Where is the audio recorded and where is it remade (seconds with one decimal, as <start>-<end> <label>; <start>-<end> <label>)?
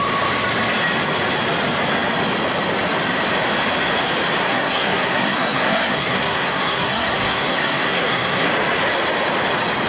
0.0-4.4 recorded; 4.4-8.5 remade; 8.5-9.9 recorded